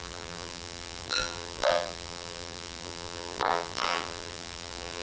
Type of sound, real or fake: fake